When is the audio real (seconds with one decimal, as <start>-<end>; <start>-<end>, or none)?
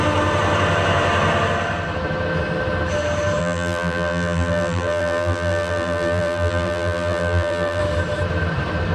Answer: 0.0-3.4; 7.8-8.9